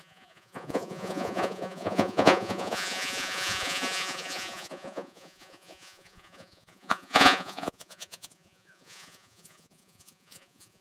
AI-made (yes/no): yes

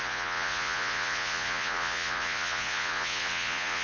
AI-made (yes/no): yes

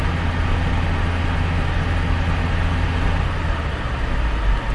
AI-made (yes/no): no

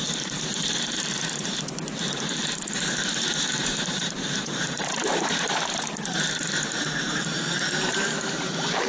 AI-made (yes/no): yes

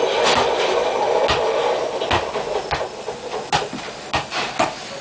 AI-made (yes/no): no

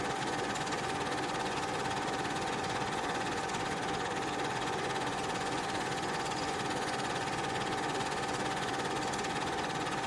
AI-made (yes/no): yes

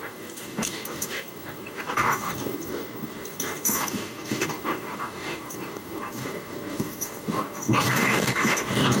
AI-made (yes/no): yes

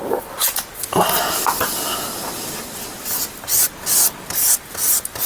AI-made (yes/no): no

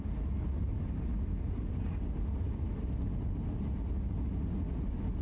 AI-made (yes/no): no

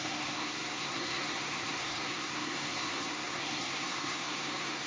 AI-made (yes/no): yes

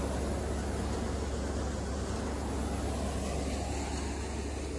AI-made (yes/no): no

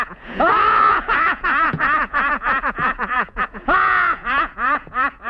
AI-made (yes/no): yes